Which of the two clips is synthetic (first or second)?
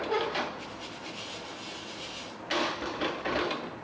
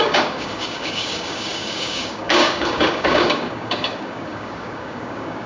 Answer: second